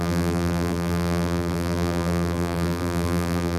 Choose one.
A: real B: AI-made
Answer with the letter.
B